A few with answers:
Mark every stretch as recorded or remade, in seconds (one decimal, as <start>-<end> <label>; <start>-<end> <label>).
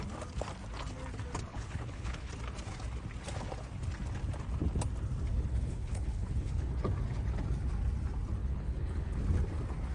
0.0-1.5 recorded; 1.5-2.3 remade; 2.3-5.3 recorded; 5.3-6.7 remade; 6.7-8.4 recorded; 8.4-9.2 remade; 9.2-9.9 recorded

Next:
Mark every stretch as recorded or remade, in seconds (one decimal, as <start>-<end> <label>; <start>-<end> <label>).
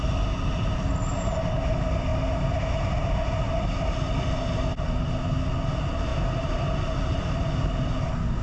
0.0-8.4 recorded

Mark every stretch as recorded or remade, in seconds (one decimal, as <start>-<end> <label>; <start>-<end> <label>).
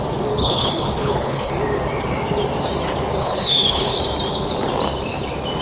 0.0-0.4 recorded; 0.4-1.5 remade; 1.5-3.2 recorded; 3.2-4.0 remade; 4.0-5.6 recorded